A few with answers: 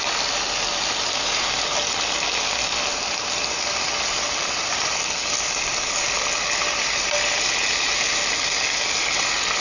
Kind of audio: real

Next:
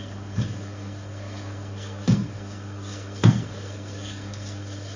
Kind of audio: fake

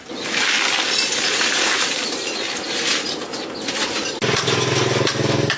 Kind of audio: real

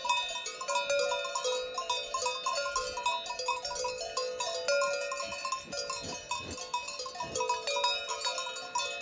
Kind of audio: real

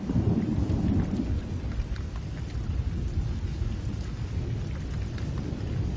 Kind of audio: real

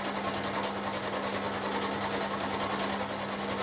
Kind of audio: real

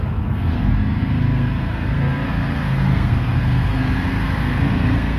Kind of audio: fake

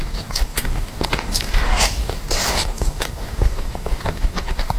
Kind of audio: fake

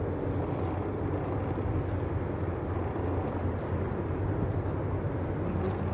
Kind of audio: real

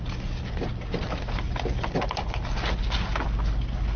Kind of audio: real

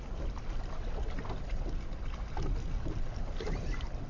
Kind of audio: real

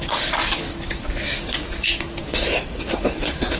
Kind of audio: fake